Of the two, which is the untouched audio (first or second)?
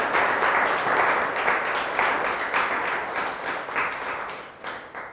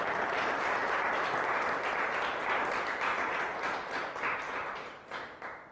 first